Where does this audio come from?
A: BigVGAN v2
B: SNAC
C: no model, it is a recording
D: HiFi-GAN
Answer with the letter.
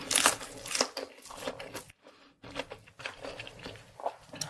C